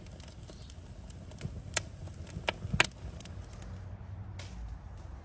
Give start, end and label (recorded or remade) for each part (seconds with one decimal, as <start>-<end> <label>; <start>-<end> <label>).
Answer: 0.0-5.2 recorded